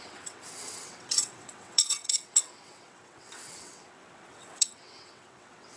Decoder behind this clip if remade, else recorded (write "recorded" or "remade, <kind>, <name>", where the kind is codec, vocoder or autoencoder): remade, vocoder, WaveNeXt